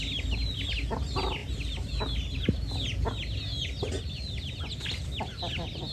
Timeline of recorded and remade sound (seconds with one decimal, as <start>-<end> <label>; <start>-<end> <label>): 0.0-5.9 recorded